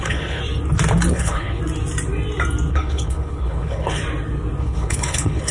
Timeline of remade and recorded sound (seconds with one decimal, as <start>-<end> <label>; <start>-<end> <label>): 0.0-0.4 remade; 0.4-1.1 recorded; 1.1-1.6 remade; 1.6-2.7 recorded; 2.7-4.0 remade; 4.0-4.6 recorded; 4.6-5.5 remade